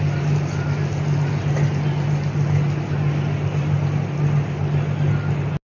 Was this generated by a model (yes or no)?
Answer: no